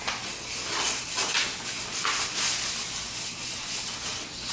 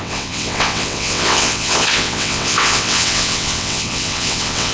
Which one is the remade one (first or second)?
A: second